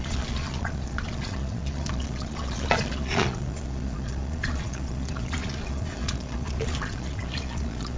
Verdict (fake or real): fake